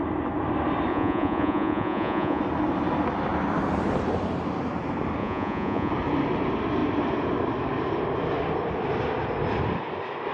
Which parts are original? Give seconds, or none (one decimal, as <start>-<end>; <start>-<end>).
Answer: 0.0-0.9; 2.4-5.2; 5.9-10.3